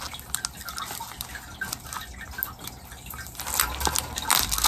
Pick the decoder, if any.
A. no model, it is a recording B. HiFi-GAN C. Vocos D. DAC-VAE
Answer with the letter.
A